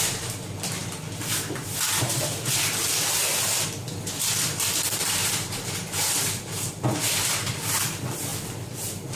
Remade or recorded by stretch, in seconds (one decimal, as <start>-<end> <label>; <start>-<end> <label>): 0.0-8.3 remade; 8.3-9.2 recorded